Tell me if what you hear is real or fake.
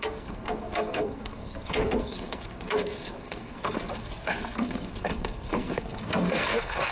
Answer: fake